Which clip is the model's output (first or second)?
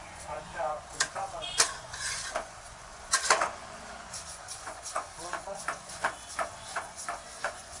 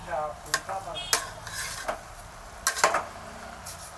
first